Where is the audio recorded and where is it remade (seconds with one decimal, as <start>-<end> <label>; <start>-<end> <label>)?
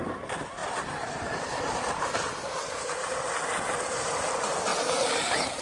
0.0-0.6 recorded; 0.6-3.3 remade; 3.3-4.7 recorded; 4.7-5.6 remade